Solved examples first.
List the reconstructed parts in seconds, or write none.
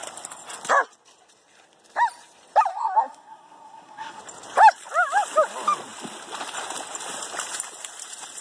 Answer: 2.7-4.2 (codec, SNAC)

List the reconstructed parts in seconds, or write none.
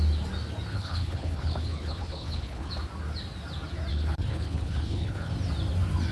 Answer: 0.7-2.7 (codec, HILCodec); 3.9-5.3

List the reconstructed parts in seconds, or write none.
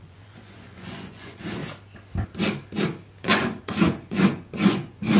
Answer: 0.0-1.6 (vocoder, Vocos); 3.2-5.2